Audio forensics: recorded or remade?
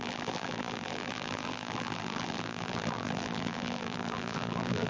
remade